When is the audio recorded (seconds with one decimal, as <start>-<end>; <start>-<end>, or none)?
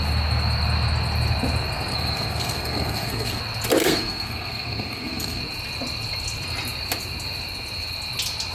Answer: 0.0-1.9; 3.4-3.8; 5.4-8.5